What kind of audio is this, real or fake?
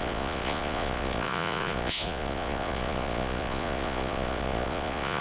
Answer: fake